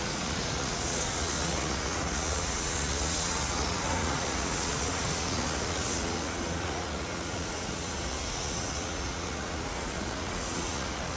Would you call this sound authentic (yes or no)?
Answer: no